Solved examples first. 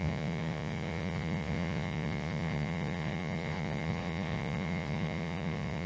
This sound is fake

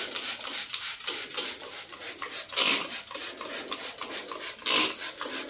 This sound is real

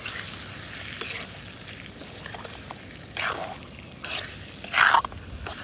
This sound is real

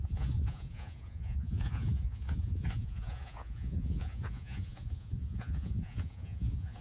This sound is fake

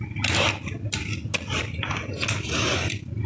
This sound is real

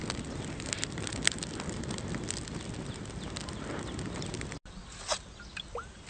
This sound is real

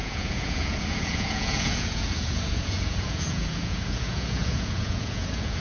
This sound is fake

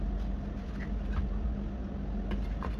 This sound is real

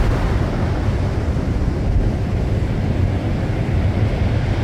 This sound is real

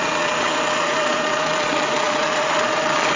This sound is fake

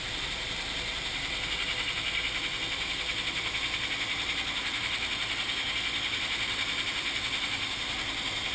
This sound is real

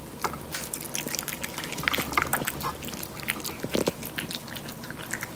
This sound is real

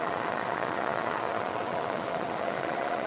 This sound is fake